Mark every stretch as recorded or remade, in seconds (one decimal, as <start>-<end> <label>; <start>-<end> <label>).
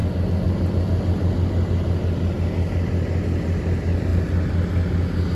0.0-5.3 recorded